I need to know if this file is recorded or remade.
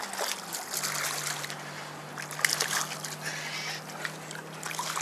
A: recorded